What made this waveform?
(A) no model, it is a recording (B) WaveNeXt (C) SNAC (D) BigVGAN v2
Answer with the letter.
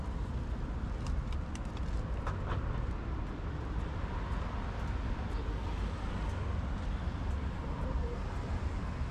A